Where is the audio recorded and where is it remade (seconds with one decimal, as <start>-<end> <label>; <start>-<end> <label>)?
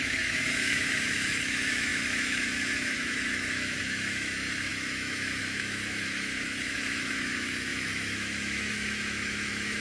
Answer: 0.0-9.8 remade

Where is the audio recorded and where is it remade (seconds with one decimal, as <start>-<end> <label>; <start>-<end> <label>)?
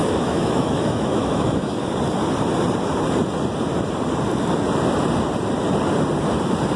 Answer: 0.0-1.9 remade; 1.9-6.8 recorded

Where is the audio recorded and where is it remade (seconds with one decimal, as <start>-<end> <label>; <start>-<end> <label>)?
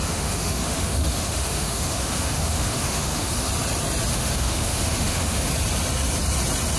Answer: 0.0-3.5 remade; 3.5-4.1 recorded; 4.1-5.5 remade; 5.5-6.8 recorded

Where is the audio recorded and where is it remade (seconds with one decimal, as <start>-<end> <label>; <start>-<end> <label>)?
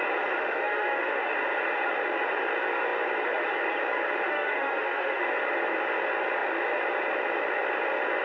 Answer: 0.0-0.4 recorded; 0.4-1.3 remade; 1.3-4.3 recorded; 4.3-5.2 remade; 5.2-8.2 recorded